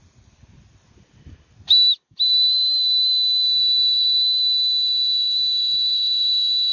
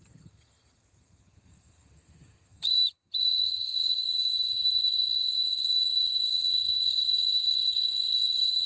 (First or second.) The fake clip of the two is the second